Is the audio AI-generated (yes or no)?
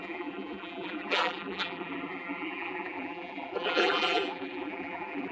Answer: yes